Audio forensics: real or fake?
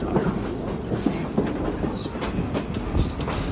real